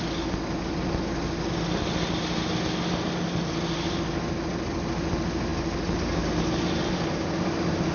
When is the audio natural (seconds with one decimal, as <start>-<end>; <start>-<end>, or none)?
0.0-7.9